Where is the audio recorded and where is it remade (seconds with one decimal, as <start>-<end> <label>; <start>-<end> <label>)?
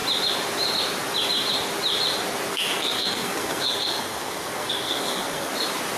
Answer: 0.0-2.5 recorded; 2.5-5.5 remade; 5.5-6.0 recorded